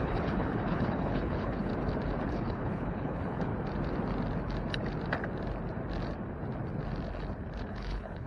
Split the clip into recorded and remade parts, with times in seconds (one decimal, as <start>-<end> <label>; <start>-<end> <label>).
0.0-1.7 remade; 1.7-2.3 recorded; 2.3-3.5 remade; 3.5-7.7 recorded; 7.7-8.3 remade